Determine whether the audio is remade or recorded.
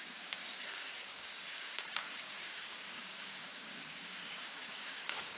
remade